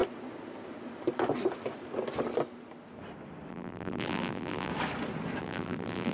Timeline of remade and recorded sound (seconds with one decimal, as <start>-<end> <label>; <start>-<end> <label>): 0.0-3.5 recorded; 3.5-4.7 remade; 4.7-5.4 recorded; 5.4-6.1 remade